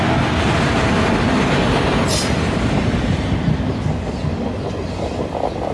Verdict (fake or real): real